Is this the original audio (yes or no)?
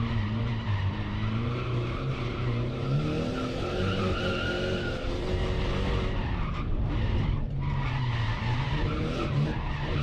no